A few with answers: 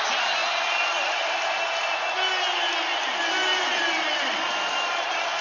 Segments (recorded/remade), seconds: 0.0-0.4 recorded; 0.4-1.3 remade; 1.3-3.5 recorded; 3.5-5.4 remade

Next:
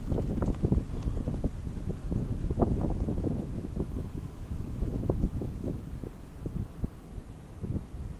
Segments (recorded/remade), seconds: 0.0-2.0 recorded; 2.0-6.1 remade; 6.1-8.2 recorded

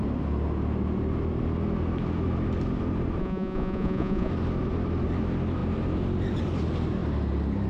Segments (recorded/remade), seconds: 0.0-3.2 recorded; 3.2-4.3 remade; 4.3-7.7 recorded